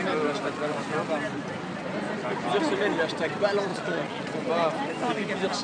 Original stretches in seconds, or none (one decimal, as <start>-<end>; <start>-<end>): 0.0-3.7; 4.2-5.6